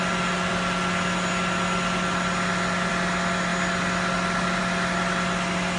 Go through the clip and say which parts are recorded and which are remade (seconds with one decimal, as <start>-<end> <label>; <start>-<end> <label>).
0.0-5.8 recorded